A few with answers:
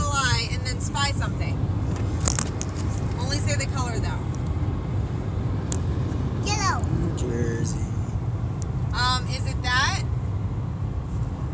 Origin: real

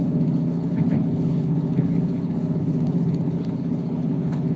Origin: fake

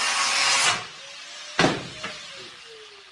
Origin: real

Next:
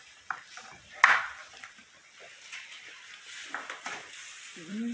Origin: real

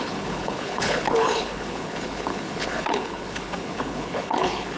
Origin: fake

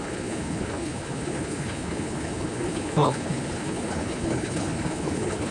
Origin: fake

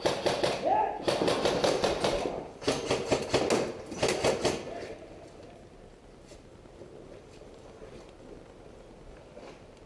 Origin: real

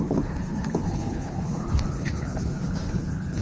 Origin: fake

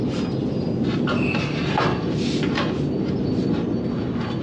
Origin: real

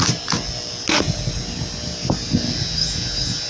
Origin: real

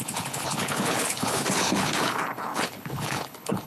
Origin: fake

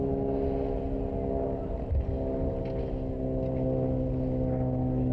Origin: real